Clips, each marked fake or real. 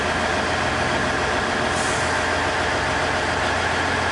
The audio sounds real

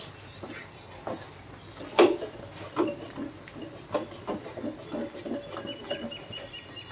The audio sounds real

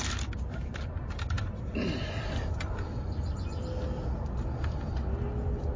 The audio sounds real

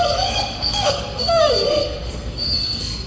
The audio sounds fake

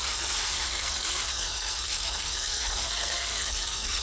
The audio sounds fake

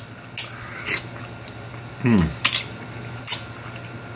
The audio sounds real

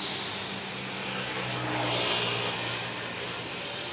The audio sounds real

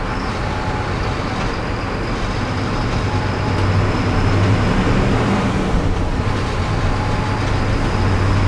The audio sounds real